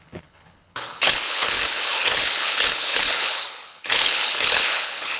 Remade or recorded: remade